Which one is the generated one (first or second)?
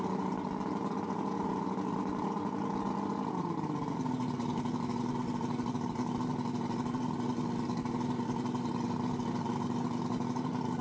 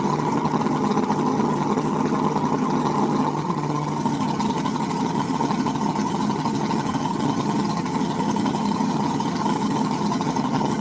second